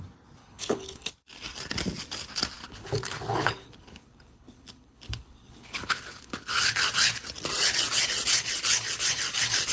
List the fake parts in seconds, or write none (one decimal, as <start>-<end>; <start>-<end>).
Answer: 0.4-1.1; 2.6-6.8

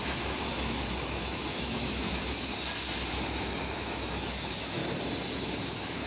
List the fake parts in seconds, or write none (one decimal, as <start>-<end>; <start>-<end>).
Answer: 0.0-2.5; 3.6-4.8; 5.6-6.1

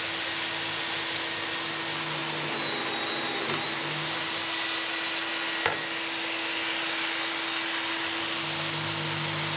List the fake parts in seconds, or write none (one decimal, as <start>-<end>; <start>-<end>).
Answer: none